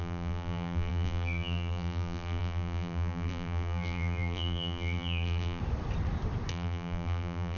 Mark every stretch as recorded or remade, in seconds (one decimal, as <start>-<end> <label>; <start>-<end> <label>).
0.0-5.6 remade; 5.6-6.5 recorded; 6.5-7.6 remade